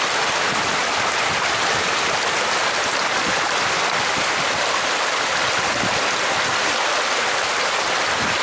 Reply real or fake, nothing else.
fake